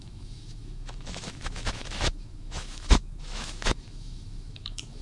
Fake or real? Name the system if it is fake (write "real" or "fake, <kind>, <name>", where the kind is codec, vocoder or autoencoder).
fake, autoencoder, DAC-VAE